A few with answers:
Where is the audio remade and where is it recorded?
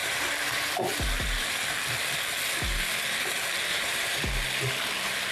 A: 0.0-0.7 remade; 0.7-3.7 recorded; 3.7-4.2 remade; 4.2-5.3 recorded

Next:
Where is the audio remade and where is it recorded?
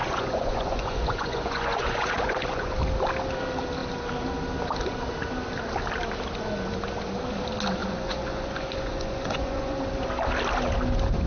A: 0.0-2.7 remade; 2.7-7.8 recorded; 7.8-9.8 remade; 9.8-11.3 recorded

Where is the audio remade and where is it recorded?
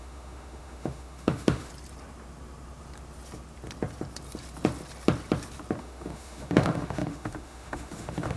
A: 0.0-1.7 remade; 1.7-5.8 recorded; 5.8-8.4 remade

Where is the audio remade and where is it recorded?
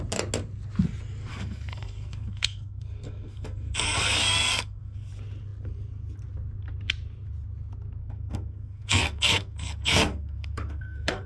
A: 0.0-1.3 recorded; 1.3-5.1 remade; 5.1-8.0 recorded; 8.0-11.3 remade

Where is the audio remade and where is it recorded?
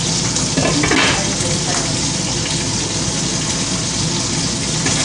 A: 0.0-5.0 recorded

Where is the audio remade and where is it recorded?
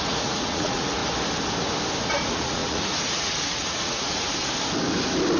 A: 0.0-1.0 remade; 1.0-2.0 recorded; 2.0-4.4 remade; 4.4-5.4 recorded